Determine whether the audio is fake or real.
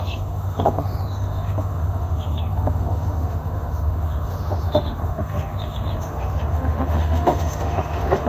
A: fake